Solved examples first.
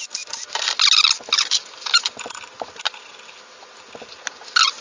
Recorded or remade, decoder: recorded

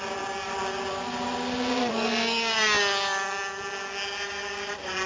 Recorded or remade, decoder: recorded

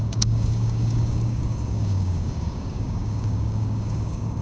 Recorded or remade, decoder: remade, codec, DAC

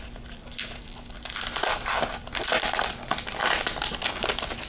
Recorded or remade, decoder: recorded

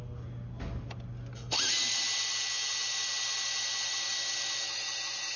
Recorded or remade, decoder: recorded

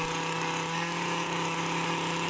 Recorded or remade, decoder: remade, codec, DAC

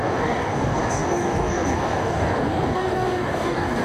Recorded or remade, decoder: remade, codec, DAC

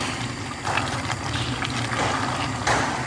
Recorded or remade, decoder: recorded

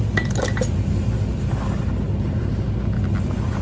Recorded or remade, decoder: recorded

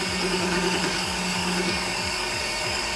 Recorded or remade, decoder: remade, codec, DAC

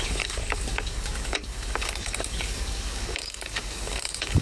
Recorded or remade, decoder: remade, codec, DAC